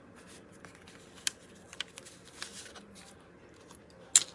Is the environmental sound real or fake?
real